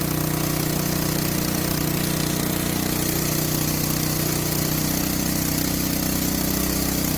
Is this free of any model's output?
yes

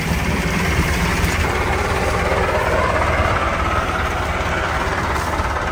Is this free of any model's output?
yes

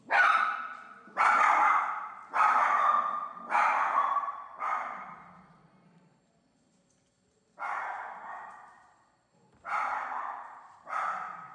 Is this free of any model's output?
yes